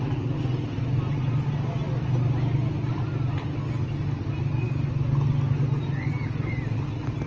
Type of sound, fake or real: real